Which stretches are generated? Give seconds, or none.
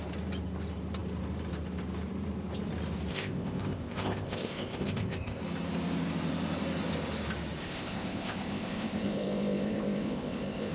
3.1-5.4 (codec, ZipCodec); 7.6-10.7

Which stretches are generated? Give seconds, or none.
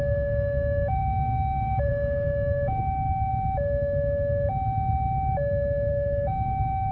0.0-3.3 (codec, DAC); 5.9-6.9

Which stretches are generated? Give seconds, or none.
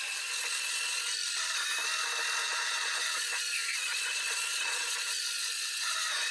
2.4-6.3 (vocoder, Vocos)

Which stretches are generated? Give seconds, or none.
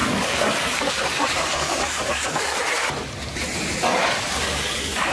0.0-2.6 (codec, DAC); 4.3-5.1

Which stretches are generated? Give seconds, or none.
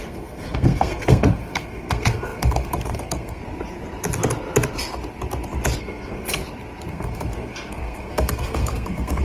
0.0-3.4 (codec, SNAC); 5.8-6.4; 6.9-9.2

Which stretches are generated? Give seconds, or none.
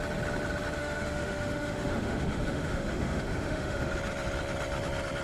0.8-3.9 (autoencoder, DAC-VAE)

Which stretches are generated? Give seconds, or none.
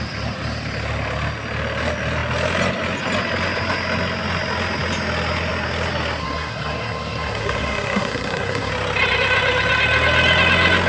6.2-8.7 (codec, SNAC)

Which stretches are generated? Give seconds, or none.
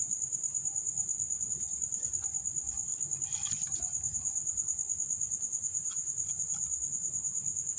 1.0-1.5 (vocoder, BigVGAN v2)